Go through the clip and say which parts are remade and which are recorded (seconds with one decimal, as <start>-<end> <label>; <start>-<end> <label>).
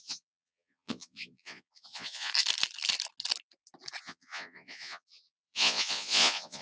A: 0.0-2.3 remade; 2.3-4.0 recorded; 4.0-6.6 remade